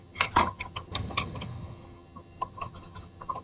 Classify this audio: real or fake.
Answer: fake